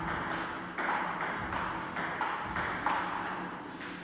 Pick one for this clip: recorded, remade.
recorded